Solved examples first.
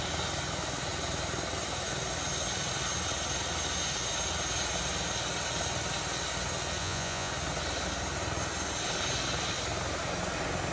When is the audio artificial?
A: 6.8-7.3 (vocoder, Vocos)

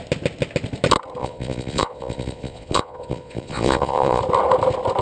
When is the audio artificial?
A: 1.2-4.2 (vocoder, Vocos)

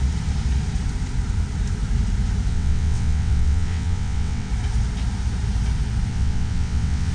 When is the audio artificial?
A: 2.5-4.5 (vocoder, WaveNeXt); 6.1-7.1

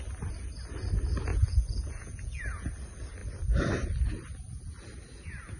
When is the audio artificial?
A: 1.3-2.7 (vocoder, Vocos)